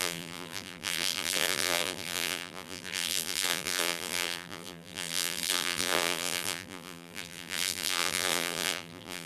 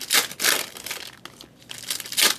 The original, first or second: second